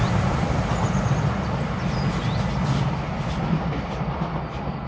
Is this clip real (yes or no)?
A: yes